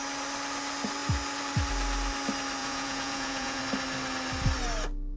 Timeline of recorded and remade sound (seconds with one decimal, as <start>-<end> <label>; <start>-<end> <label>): 0.0-2.6 recorded; 2.6-3.6 remade; 3.6-5.2 recorded